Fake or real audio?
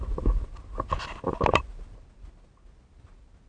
real